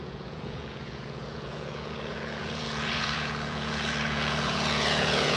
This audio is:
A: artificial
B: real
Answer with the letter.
A